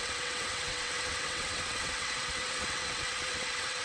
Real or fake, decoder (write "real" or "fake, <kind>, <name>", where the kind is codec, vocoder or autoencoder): fake, vocoder, WaveNeXt